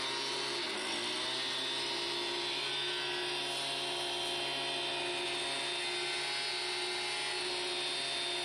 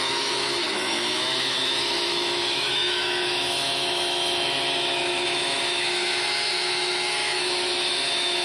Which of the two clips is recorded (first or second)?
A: first